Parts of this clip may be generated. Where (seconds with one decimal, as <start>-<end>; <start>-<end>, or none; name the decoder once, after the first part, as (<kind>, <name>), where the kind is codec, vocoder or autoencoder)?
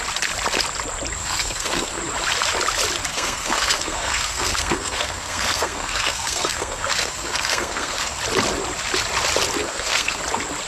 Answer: 1.2-2.0 (codec, SNAC); 3.1-8.2; 9.6-10.2